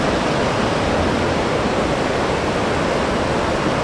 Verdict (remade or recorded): recorded